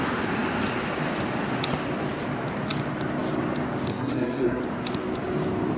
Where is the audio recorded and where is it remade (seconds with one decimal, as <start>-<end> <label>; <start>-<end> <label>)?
0.0-3.9 recorded; 3.9-4.6 remade; 4.6-5.8 recorded